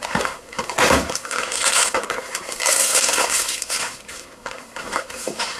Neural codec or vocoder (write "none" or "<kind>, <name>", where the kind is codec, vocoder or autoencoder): codec, SNAC